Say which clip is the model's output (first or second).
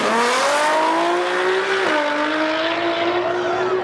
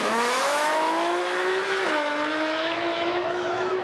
second